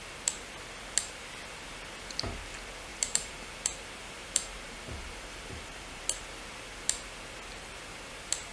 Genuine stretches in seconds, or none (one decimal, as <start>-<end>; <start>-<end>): 0.0-2.9; 3.8-4.2; 6.0-8.5